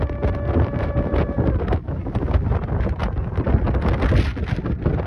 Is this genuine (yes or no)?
yes